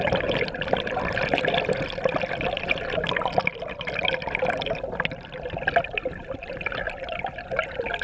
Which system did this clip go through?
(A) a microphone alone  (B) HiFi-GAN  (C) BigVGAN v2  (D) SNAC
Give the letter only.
A